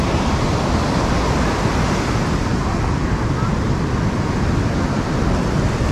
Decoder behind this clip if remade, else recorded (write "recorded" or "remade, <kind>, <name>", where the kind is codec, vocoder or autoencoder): recorded